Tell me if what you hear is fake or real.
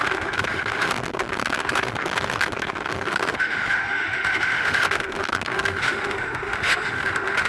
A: fake